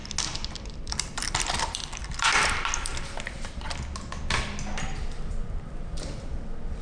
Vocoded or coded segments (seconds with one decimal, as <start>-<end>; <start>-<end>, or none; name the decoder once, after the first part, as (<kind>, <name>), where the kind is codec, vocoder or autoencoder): 1.1-2.9 (vocoder, BigVGAN v2); 5.3-6.8

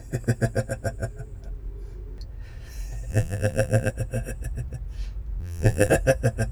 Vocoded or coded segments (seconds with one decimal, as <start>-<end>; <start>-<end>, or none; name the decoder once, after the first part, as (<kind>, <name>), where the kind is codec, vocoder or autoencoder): 3.1-3.9 (vocoder, BigVGAN v2); 5.4-5.9